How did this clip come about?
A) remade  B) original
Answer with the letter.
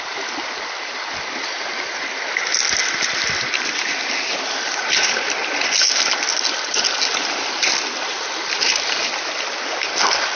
B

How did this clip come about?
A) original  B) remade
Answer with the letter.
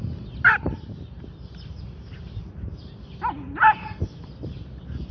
A